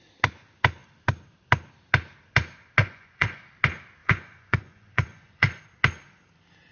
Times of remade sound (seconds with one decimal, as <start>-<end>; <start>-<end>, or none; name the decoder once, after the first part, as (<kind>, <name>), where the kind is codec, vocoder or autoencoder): 2.8-3.4 (vocoder, Vocos); 4.0-5.6